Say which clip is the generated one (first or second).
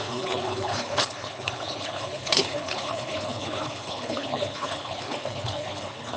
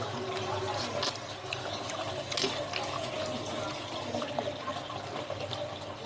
first